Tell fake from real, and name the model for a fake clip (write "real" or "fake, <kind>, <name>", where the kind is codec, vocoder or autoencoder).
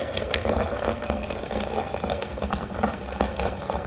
fake, codec, SNAC